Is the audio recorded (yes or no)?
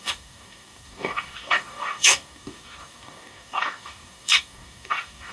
no